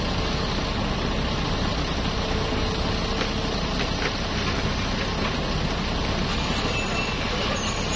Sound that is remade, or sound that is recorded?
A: recorded